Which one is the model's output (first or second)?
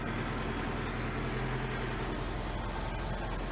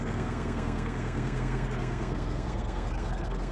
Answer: second